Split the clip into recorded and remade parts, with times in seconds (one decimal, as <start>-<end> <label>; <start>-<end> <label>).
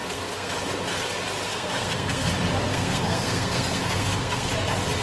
0.0-0.5 remade; 0.5-1.5 recorded; 1.5-2.3 remade; 2.3-2.7 recorded; 2.7-4.5 remade; 4.5-5.0 recorded